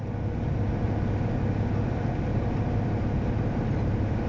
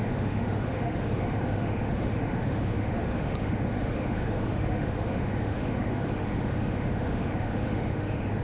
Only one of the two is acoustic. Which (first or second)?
first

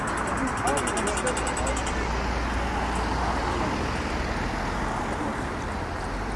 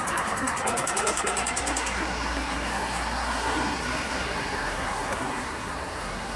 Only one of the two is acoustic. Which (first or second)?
first